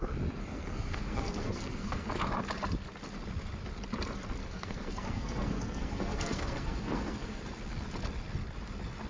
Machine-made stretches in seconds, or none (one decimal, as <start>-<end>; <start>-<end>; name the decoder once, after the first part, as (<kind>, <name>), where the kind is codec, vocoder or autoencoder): 0.4-2.1 (codec, SNAC); 4.4-7.4